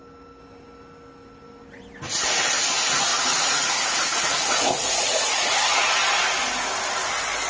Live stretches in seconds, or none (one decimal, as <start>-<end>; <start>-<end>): 0.0-3.1; 5.9-7.5